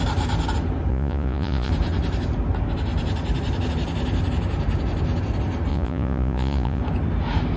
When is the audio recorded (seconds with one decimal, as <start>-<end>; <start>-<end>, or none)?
0.0-0.9; 1.7-5.7; 6.8-7.6